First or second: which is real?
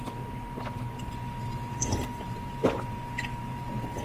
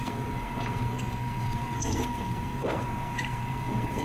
first